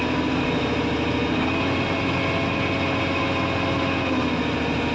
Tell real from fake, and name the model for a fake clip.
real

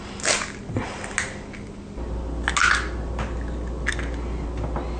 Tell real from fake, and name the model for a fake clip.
real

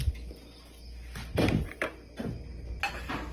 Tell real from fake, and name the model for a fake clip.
real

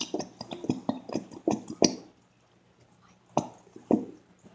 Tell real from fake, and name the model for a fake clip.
real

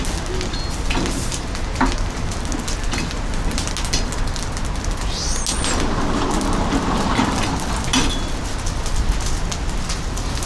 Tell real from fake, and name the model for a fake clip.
real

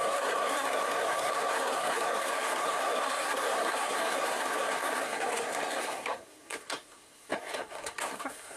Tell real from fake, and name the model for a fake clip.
fake, codec, SNAC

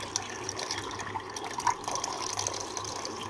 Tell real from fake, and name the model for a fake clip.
real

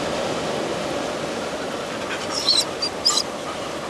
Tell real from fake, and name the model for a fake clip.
real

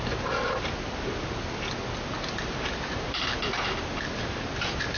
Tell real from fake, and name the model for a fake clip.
real